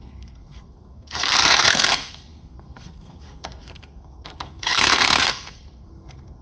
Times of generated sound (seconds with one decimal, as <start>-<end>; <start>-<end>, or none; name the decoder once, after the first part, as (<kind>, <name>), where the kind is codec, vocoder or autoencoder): 0.0-6.4 (codec, SNAC)